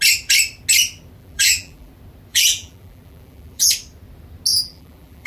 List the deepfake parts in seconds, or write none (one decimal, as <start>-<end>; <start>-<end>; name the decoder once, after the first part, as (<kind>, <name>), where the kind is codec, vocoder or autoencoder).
1.2-1.9 (vocoder, BigVGAN v2); 2.3-3.7; 4.5-5.3